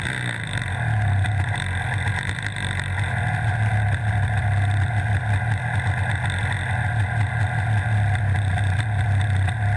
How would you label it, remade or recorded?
recorded